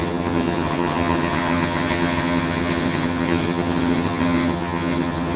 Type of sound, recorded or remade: remade